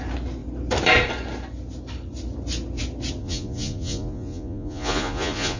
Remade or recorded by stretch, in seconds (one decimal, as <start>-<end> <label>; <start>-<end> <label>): 0.0-3.2 recorded; 3.2-5.6 remade